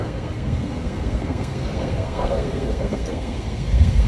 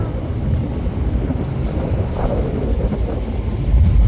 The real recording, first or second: second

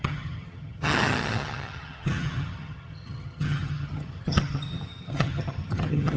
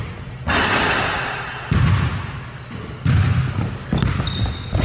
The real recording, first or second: second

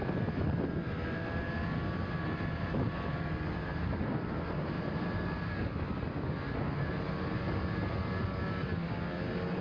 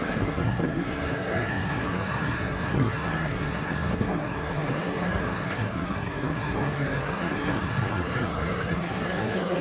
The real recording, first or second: first